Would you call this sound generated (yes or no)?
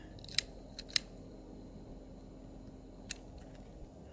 no